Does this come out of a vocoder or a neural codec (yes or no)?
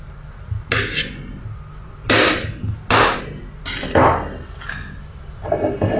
no